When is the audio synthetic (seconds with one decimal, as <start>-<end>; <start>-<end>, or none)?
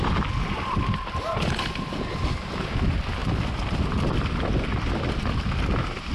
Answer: none